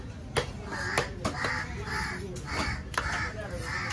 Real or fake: real